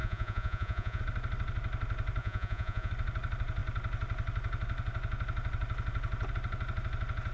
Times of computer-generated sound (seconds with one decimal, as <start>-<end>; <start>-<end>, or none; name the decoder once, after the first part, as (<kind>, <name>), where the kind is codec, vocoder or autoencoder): 0.0-1.0 (vocoder, Vocos); 2.2-2.9